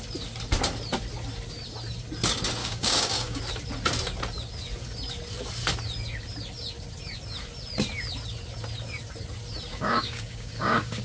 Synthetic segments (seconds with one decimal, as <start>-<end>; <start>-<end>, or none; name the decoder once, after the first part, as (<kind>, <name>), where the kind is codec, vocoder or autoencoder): 2.6-3.4 (codec, DAC); 9.7-11.0